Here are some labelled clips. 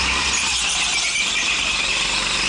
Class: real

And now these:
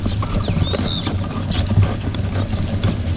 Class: real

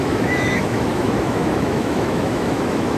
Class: fake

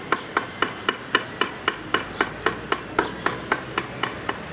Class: real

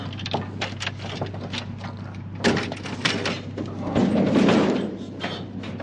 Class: real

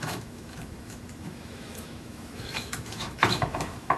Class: fake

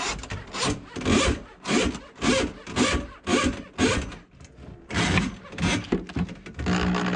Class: real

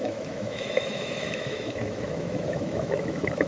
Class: fake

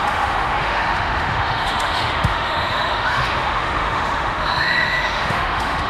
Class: fake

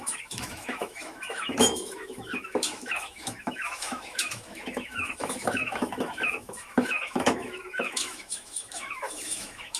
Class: fake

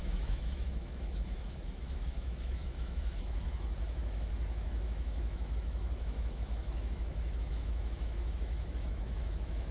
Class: fake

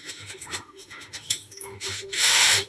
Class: fake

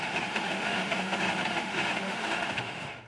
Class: fake